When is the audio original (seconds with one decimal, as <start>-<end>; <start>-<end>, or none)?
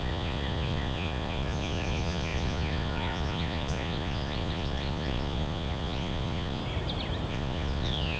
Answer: 6.6-7.3